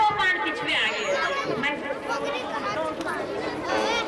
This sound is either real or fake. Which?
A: real